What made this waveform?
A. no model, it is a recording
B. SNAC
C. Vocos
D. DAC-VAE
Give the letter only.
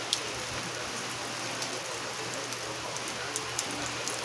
A